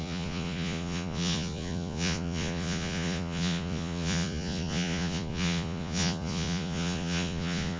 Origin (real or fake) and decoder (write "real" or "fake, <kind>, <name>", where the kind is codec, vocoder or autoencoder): fake, vocoder, Vocos